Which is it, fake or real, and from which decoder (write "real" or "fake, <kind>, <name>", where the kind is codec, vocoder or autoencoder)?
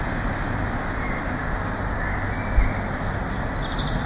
real